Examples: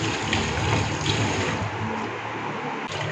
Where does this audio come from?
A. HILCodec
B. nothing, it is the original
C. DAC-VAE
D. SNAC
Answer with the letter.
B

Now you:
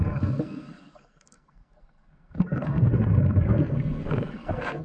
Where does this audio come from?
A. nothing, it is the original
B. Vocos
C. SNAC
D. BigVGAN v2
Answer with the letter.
C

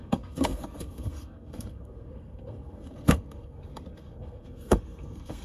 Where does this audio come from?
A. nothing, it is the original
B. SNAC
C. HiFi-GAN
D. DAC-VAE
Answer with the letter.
B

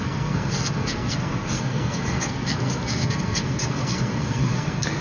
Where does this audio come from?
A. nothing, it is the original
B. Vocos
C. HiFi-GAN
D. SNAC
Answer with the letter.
D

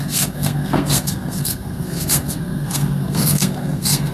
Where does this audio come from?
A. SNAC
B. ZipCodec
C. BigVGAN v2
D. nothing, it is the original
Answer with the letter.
A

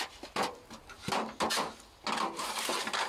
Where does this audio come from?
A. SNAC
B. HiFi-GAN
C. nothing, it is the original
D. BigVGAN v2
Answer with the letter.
C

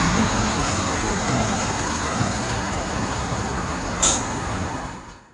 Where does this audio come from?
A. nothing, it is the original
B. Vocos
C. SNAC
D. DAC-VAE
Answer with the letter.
C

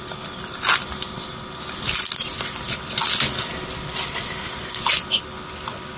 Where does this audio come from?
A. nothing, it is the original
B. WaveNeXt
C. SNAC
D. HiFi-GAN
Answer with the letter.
A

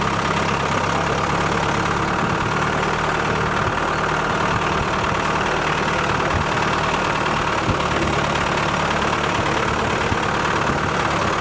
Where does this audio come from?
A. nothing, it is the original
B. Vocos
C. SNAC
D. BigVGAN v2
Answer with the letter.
A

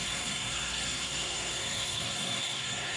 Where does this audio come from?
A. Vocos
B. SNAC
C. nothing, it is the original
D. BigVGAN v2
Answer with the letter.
B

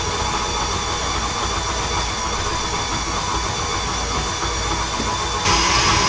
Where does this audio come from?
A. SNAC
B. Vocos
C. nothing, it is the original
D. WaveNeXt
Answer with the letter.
C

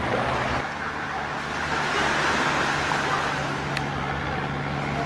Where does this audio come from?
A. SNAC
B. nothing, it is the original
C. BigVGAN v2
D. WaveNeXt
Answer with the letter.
B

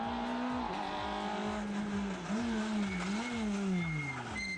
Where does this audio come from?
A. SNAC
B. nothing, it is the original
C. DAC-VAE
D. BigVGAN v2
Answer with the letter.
B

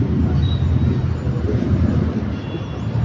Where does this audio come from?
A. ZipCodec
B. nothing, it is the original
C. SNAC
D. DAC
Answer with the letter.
B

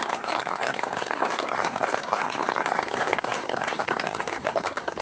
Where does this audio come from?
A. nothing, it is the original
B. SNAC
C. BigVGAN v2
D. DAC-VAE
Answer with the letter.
B